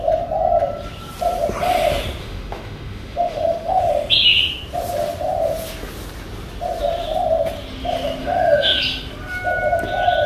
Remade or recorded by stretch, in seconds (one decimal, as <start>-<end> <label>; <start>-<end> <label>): 0.0-2.2 recorded; 2.2-3.8 remade; 3.8-8.2 recorded; 8.2-8.8 remade; 8.8-10.3 recorded